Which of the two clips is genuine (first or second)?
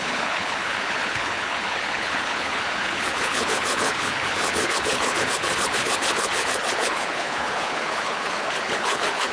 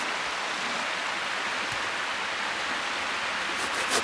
second